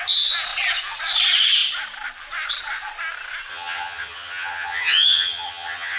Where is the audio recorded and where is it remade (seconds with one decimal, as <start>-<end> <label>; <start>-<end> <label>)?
0.0-3.5 recorded; 3.5-6.0 remade